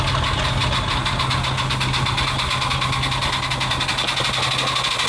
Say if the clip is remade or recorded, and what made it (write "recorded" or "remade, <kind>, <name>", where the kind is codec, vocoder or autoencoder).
recorded